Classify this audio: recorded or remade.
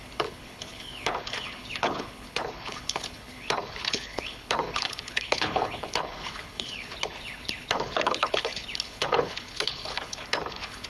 remade